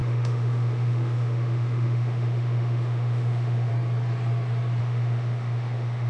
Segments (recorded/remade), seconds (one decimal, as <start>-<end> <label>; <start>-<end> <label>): 0.0-3.7 remade; 3.7-4.8 recorded; 4.8-6.1 remade